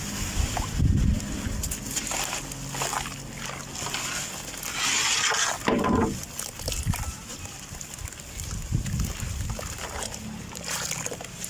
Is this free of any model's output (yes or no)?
yes